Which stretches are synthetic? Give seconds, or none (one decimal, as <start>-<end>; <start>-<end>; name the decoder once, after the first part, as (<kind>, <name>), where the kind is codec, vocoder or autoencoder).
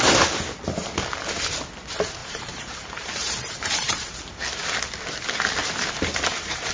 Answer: 2.2-4.3 (vocoder, BigVGAN v2); 5.6-6.7